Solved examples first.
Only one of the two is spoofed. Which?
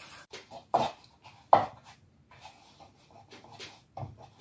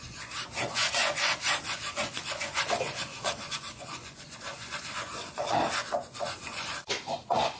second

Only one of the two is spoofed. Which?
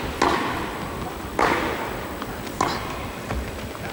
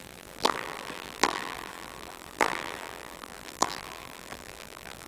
second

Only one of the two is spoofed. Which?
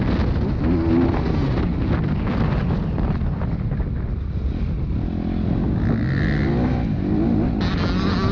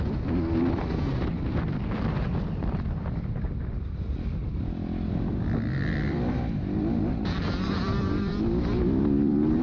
second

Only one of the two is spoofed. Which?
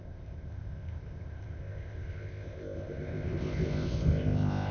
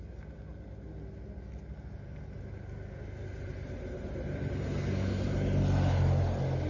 first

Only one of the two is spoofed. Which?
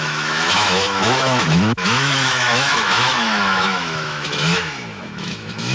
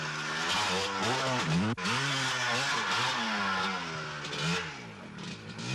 first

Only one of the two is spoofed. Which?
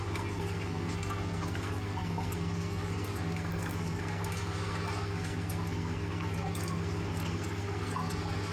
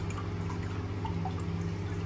first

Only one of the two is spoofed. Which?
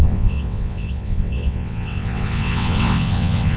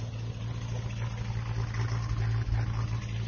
first